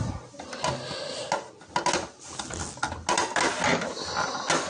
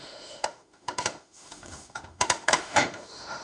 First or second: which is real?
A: first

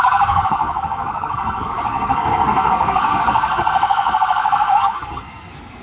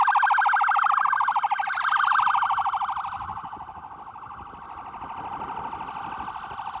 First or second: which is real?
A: second